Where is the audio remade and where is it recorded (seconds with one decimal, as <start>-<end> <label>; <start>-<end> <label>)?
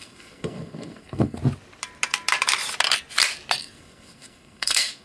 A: 0.0-1.4 remade; 1.4-3.6 recorded; 3.6-5.0 remade